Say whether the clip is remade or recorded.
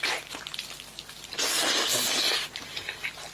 recorded